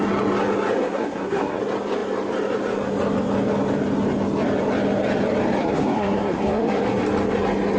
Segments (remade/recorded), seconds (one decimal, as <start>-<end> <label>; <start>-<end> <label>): 0.0-0.8 recorded; 0.8-1.6 remade; 1.6-5.6 recorded; 5.6-6.8 remade; 6.8-7.8 recorded